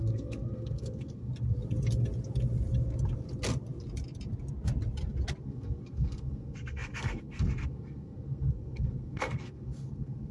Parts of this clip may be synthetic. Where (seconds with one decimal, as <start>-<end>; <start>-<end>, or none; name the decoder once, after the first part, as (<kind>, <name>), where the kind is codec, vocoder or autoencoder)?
0.0-1.3 (codec, SNAC); 5.4-10.3